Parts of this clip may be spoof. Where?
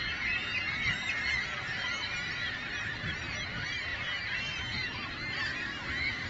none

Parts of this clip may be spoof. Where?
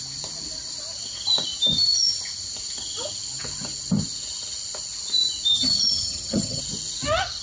5.5-6.6 (vocoder, HiFi-GAN)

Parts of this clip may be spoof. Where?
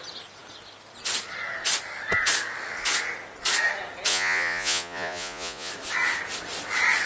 4.1-5.7 (vocoder, Vocos)